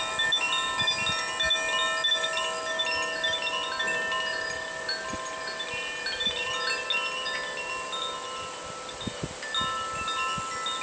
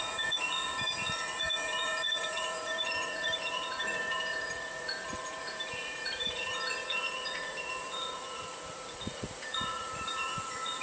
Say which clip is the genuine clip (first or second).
first